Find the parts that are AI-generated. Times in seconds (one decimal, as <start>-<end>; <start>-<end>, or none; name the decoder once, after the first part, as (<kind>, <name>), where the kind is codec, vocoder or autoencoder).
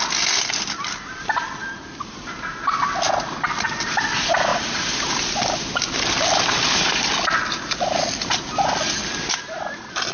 4.5-5.4 (vocoder, BigVGAN v2)